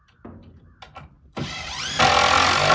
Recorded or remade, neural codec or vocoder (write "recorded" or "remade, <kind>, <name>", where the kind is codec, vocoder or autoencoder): recorded